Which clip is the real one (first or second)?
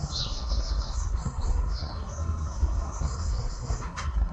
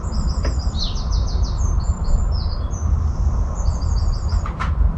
second